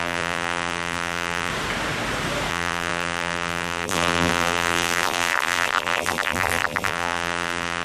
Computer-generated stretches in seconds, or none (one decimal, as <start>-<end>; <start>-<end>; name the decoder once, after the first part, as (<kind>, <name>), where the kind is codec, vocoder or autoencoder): 0.0-1.5 (vocoder, BigVGAN v2); 2.5-7.8